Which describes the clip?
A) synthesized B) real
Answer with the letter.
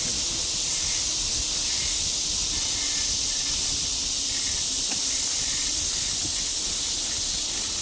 B